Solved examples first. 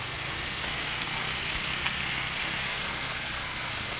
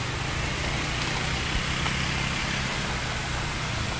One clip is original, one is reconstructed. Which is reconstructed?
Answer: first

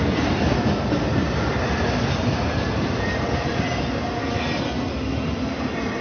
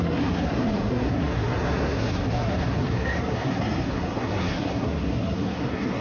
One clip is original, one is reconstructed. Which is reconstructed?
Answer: second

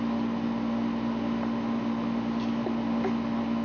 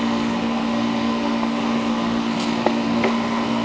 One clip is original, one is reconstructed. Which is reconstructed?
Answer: second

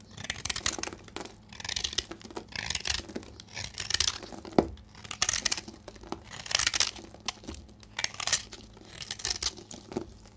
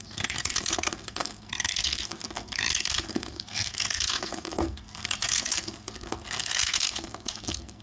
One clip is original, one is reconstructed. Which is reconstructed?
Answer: second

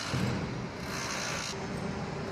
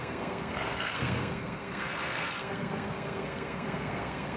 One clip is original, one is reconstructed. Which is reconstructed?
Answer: second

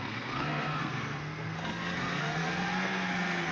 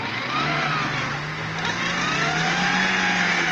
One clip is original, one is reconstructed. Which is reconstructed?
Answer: first